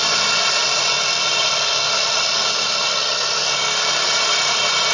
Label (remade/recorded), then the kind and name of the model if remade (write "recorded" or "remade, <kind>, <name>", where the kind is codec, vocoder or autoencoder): recorded